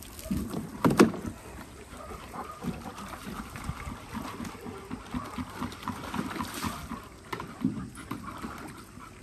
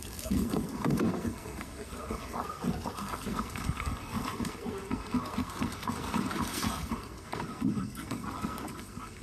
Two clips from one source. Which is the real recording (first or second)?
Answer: first